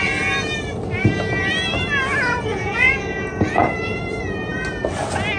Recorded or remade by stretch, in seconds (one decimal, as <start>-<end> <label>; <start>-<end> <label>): 0.0-2.5 recorded; 2.5-4.0 remade; 4.0-5.4 recorded